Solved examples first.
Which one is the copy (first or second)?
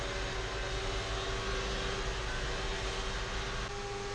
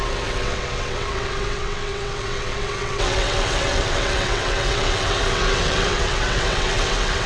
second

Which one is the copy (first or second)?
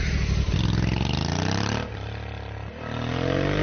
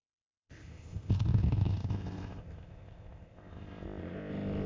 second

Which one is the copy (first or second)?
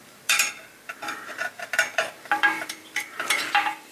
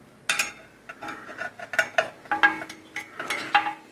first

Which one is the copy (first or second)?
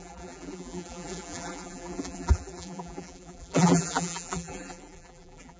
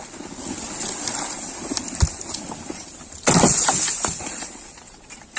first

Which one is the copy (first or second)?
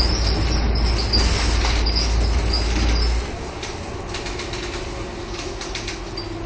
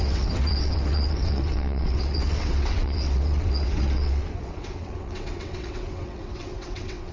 second